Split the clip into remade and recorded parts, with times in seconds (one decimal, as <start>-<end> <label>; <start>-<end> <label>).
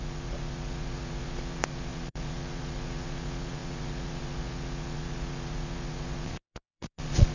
0.0-7.3 remade